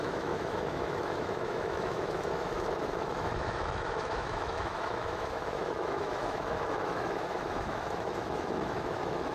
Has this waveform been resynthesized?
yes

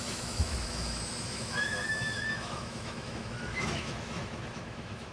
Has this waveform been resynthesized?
yes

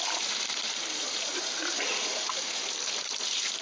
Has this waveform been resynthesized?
yes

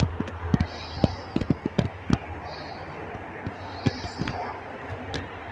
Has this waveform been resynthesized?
no